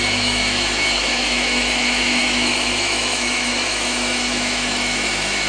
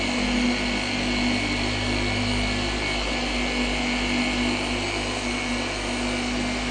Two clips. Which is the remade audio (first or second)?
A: first